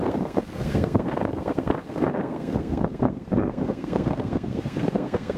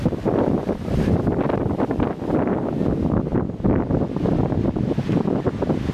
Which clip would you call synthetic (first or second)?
first